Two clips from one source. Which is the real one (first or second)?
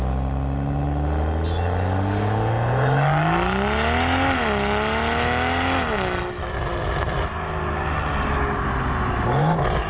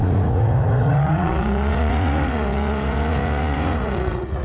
first